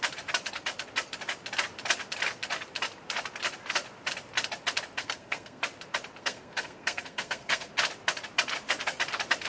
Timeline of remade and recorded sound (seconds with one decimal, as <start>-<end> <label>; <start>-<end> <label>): 0.0-5.0 recorded; 5.0-5.6 remade; 5.6-6.2 recorded; 6.2-7.7 remade; 7.7-9.5 recorded